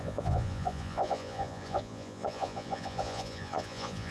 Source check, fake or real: fake